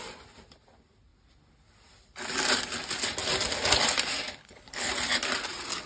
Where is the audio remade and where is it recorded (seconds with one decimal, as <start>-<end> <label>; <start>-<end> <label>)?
0.0-4.4 recorded; 4.4-4.9 remade; 4.9-5.9 recorded